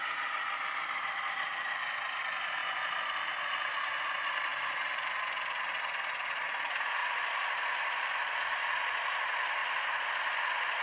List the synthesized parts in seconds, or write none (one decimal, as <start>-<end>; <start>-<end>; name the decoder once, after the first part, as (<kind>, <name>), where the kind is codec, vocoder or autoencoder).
9.6-10.1 (vocoder, BigVGAN v2)